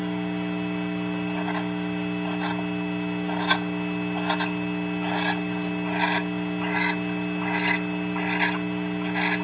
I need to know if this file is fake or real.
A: real